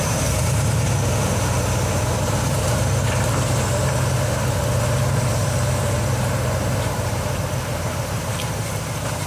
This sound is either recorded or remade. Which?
remade